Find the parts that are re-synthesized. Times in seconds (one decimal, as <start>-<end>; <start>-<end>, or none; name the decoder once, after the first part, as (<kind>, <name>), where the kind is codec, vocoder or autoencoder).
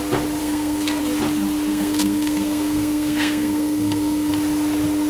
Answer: 0.4-1.0 (codec, SNAC); 1.7-4.3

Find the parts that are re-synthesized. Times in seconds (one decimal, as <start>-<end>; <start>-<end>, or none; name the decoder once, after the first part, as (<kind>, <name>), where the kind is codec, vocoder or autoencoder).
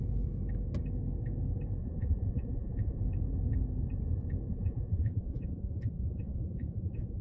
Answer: 1.8-3.0 (vocoder, Vocos); 4.5-7.2